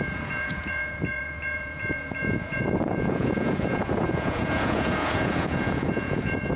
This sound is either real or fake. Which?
fake